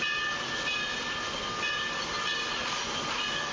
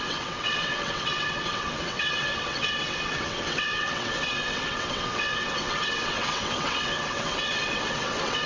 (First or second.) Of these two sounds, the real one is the first